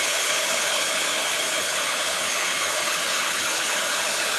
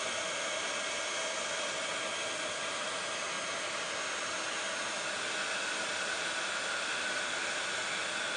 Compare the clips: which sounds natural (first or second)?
second